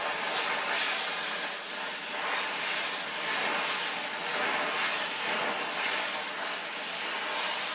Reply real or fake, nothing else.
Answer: real